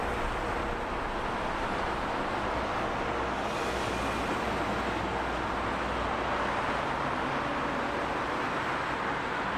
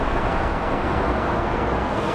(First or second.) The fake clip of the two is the second